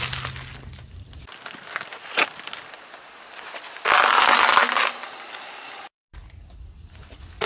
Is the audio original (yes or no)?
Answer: yes